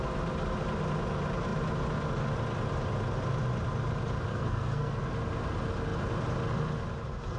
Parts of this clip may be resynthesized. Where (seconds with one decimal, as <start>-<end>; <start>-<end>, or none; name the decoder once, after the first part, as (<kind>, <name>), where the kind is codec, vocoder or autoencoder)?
4.3-5.1 (codec, SNAC)